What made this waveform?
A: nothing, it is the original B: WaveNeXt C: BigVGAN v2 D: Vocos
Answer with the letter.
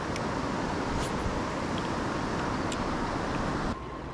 A